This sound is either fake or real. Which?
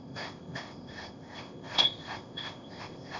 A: fake